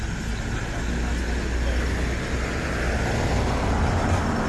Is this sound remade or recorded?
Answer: recorded